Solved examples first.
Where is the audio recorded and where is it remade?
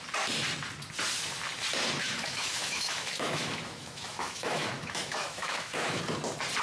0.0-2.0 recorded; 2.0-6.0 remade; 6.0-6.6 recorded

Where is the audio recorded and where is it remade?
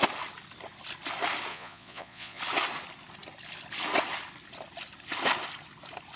0.0-1.5 recorded; 1.5-2.4 remade; 2.4-6.2 recorded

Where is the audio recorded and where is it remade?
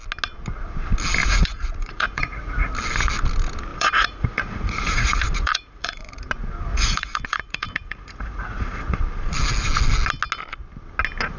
0.0-1.2 recorded; 1.2-2.7 remade; 2.7-3.7 recorded; 3.7-6.2 remade; 6.2-6.7 recorded; 6.7-9.0 remade; 9.0-11.4 recorded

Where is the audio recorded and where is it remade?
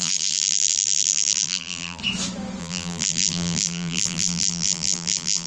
0.0-2.0 remade; 2.0-2.6 recorded; 2.6-5.5 remade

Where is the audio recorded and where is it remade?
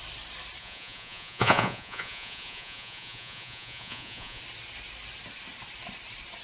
0.0-0.6 recorded; 0.6-4.4 remade; 4.4-6.4 recorded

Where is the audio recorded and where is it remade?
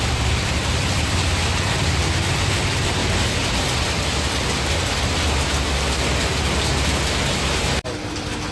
0.0-3.0 remade; 3.0-8.1 recorded; 8.1-8.5 remade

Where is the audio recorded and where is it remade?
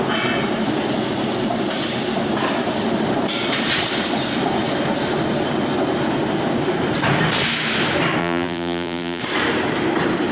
0.0-8.2 recorded; 8.2-9.2 remade; 9.2-10.3 recorded